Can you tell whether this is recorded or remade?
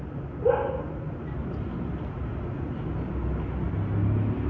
recorded